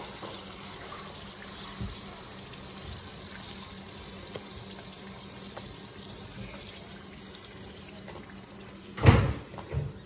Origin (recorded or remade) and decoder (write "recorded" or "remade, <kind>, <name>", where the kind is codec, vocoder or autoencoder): recorded